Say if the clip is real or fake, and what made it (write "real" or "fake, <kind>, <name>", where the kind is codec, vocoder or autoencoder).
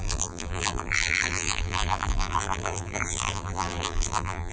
fake, vocoder, BigVGAN v2